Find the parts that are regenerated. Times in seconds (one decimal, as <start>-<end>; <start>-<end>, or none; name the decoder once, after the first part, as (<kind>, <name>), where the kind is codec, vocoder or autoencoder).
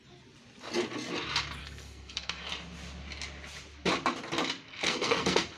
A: 1.6-2.5 (codec, SNAC); 4.7-5.6